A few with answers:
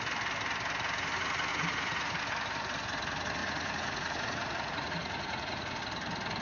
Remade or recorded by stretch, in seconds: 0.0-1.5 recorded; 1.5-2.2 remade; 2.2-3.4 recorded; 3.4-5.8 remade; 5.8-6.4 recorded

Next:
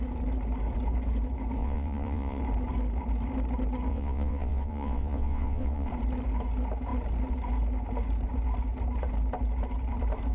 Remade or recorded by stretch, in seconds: 0.0-1.6 recorded; 1.6-2.4 remade; 2.4-3.9 recorded; 3.9-5.9 remade; 5.9-10.3 recorded

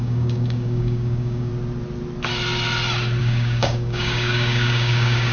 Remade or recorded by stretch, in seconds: 0.0-1.5 remade; 1.5-3.2 recorded; 3.2-5.3 remade

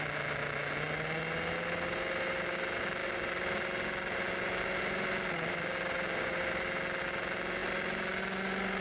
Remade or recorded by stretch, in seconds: 0.0-8.8 recorded

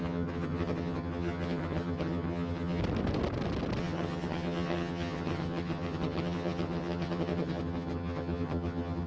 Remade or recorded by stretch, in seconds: 0.0-2.8 remade; 2.8-3.8 recorded; 3.8-9.1 remade

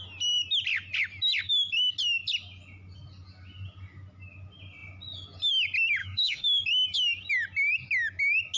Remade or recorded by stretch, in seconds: 0.0-6.0 recorded; 6.0-6.6 remade; 6.6-8.6 recorded